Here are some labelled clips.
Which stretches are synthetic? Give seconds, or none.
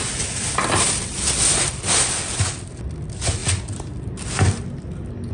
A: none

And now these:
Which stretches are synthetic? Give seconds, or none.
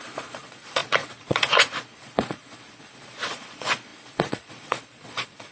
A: 0.0-5.5 (vocoder, Vocos)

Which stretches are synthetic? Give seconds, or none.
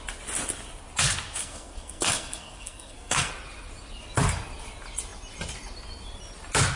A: 1.4-3.3 (codec, SNAC)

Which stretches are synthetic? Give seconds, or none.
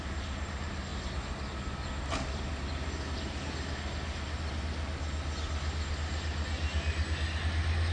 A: none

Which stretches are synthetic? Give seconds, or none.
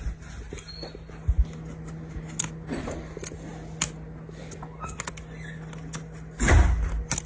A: none